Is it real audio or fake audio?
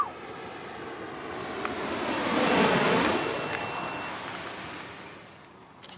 real